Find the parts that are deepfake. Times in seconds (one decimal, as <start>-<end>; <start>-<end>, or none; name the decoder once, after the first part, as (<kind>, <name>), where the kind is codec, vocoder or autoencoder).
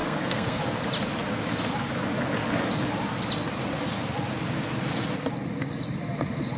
0.0-0.6 (codec, SNAC)